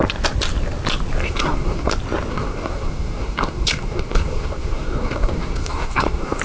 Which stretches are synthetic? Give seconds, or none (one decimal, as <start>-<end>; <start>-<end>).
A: 1.2-1.9; 2.3-6.4

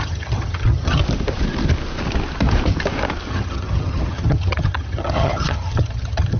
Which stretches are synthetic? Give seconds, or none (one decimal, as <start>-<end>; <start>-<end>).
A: 0.0-1.0; 3.3-6.4

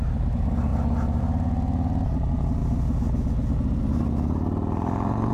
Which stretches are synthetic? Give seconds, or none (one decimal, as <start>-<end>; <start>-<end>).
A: 0.0-2.6; 3.6-5.3

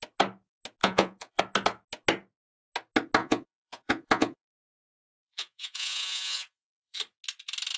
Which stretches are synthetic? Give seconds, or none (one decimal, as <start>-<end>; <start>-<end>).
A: 0.8-1.4; 3.2-7.0

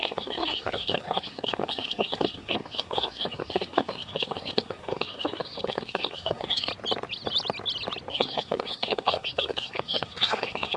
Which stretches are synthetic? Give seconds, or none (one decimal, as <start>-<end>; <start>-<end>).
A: 0.0-6.7; 8.1-10.8

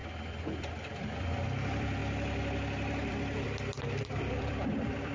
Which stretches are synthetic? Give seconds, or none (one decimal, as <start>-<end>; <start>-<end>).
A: 0.0-2.0; 3.1-5.1

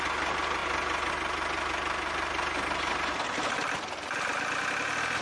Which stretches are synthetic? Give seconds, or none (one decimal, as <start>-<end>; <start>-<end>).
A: none